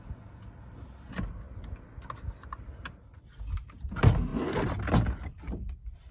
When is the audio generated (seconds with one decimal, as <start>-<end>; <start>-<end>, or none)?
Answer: none